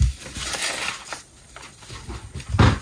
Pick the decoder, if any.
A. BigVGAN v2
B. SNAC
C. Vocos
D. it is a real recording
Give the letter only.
D